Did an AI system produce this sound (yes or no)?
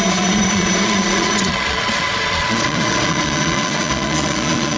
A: yes